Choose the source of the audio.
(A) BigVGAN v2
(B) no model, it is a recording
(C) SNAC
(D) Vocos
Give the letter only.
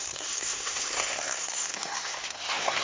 C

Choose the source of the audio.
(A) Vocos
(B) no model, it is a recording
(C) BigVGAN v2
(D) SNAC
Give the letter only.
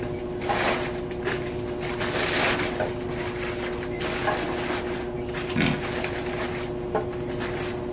B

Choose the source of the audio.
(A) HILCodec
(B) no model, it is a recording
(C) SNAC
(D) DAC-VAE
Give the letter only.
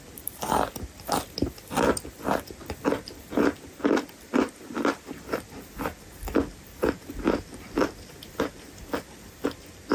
B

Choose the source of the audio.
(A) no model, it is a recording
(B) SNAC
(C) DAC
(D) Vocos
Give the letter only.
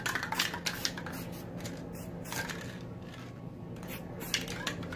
A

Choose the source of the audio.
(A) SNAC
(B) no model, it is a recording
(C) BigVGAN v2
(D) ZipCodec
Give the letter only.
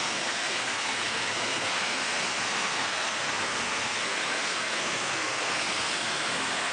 A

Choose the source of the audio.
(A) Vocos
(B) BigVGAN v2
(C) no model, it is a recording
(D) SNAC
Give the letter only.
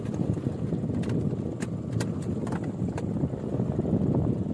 C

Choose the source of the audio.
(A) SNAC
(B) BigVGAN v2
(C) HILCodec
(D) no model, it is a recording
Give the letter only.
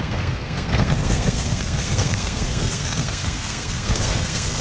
A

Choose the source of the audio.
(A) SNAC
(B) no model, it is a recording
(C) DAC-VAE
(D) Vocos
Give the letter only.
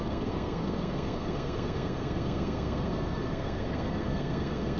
A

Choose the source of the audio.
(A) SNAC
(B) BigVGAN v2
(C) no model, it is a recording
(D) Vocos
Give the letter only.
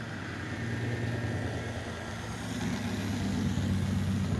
C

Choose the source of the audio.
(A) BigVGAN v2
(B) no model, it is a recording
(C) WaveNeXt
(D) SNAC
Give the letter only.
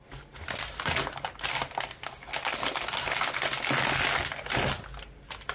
B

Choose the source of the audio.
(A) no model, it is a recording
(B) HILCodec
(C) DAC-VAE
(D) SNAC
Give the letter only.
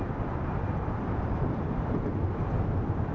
A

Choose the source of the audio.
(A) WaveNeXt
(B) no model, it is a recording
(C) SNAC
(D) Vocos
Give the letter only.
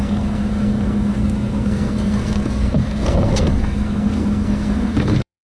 C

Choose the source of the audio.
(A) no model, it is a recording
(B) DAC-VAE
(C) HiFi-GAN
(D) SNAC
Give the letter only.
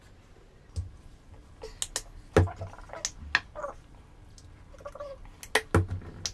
A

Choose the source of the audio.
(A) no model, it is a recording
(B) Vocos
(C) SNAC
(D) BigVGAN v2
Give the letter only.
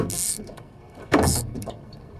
C